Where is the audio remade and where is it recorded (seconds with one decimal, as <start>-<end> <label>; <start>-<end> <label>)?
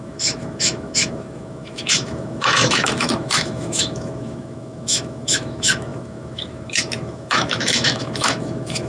0.0-8.9 remade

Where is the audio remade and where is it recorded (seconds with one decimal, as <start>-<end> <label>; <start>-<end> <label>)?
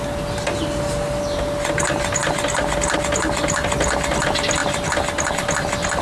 0.0-6.0 recorded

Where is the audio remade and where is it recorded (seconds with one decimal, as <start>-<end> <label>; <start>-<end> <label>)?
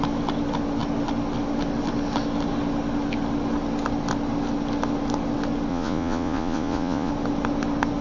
0.0-5.7 recorded; 5.7-7.1 remade; 7.1-8.0 recorded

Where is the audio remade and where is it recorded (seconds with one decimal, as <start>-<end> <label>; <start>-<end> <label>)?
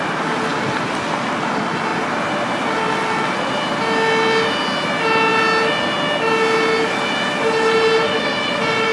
0.0-8.9 recorded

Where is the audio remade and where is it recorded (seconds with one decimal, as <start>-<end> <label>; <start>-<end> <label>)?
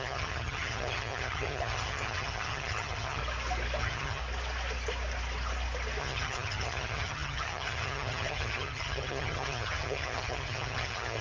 0.0-3.2 remade; 3.2-3.8 recorded; 3.8-4.2 remade; 4.2-6.0 recorded; 6.0-11.2 remade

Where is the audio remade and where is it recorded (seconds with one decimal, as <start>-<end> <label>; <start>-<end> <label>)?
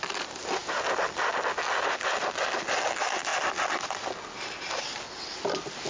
0.0-5.9 recorded